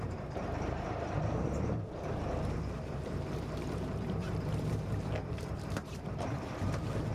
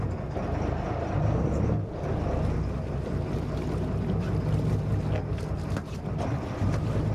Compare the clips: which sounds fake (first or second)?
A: first